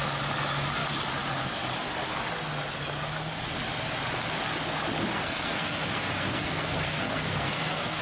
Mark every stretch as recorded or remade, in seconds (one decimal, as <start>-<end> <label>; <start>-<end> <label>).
0.0-5.1 recorded; 5.1-8.0 remade